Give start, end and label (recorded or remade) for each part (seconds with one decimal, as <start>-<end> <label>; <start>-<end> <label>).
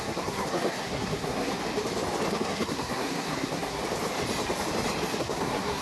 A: 0.0-1.5 remade; 1.5-2.3 recorded; 2.3-3.8 remade; 3.8-5.2 recorded; 5.2-5.8 remade